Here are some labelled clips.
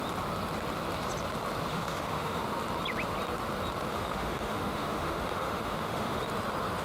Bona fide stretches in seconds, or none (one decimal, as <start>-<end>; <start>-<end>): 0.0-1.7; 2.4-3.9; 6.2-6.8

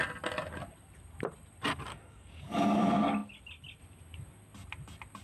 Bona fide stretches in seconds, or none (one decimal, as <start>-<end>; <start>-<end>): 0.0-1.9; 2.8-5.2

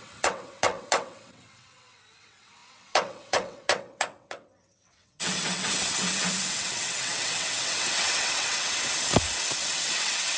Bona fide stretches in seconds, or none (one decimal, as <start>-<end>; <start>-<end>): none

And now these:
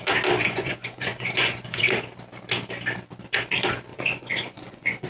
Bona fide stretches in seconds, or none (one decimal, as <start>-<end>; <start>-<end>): 0.0-0.4; 1.8-3.9